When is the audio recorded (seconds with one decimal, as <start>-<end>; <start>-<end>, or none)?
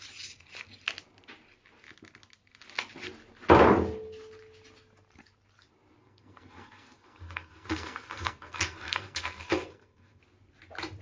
0.0-6.0; 10.2-11.0